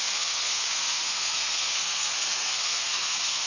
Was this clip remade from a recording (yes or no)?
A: yes